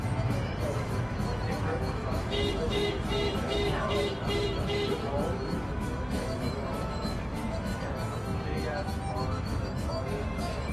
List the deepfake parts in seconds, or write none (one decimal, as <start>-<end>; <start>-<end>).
0.0-7.7; 9.1-10.7